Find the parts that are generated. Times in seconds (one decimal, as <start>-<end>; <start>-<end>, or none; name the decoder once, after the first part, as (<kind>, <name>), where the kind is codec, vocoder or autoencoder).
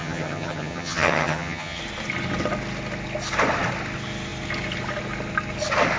0.0-1.8 (vocoder, HiFi-GAN)